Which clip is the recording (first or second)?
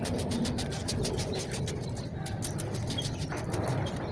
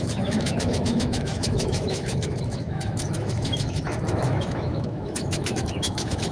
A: first